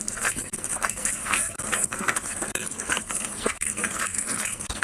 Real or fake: fake